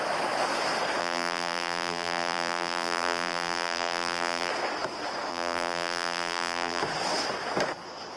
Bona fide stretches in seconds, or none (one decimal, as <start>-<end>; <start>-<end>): 0.0-1.0; 4.5-5.3; 6.8-8.2